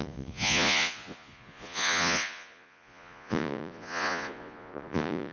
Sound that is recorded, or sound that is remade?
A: remade